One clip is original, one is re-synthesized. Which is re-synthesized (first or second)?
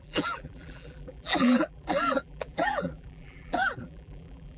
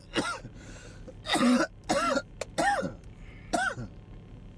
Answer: first